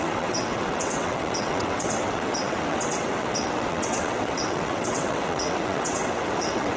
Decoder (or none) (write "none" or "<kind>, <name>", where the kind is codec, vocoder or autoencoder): vocoder, WaveNeXt